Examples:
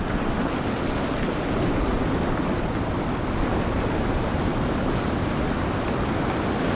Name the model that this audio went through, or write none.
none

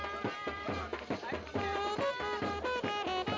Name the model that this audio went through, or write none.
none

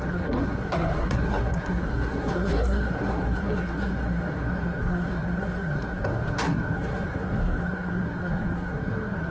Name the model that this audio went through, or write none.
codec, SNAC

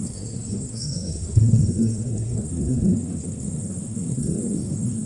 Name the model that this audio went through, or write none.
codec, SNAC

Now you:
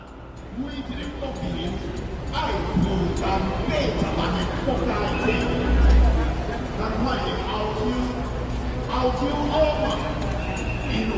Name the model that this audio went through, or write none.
none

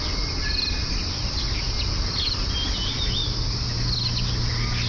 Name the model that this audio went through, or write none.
none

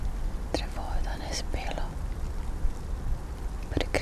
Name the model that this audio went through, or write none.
none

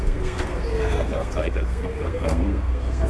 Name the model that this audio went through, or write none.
codec, SNAC